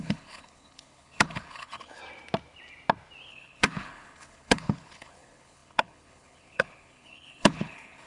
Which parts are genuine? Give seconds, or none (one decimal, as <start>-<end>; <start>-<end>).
2.0-3.3